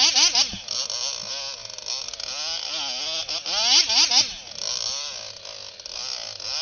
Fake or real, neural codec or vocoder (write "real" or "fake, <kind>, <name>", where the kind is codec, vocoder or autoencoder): real